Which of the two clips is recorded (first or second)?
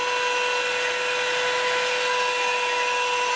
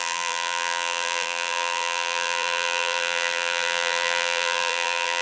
first